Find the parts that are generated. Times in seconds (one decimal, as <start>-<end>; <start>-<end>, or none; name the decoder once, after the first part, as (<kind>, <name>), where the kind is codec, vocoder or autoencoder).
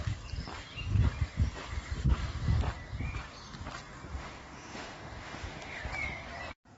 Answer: 4.1-5.8 (autoencoder, DAC-VAE)